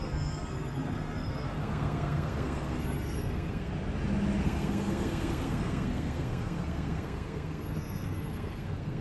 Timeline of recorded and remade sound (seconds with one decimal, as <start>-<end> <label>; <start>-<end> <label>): 0.0-3.7 remade; 3.7-4.4 recorded; 4.4-9.0 remade